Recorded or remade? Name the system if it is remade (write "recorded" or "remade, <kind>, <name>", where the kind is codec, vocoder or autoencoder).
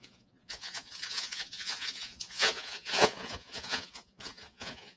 remade, vocoder, Vocos